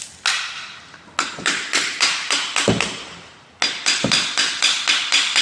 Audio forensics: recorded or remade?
recorded